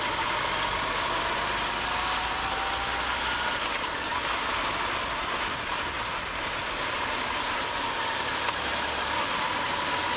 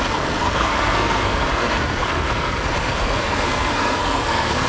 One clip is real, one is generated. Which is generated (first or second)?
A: second